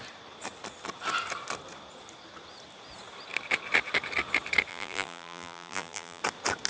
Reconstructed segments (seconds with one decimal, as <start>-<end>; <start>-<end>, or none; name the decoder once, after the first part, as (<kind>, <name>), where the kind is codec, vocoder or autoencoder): 4.7-6.2 (vocoder, BigVGAN v2)